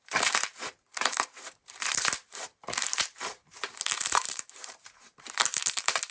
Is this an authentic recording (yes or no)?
no